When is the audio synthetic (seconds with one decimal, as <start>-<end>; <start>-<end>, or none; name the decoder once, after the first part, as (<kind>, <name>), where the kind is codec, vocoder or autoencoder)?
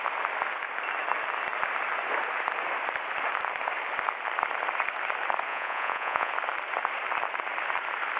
5.5-6.3 (vocoder, Vocos)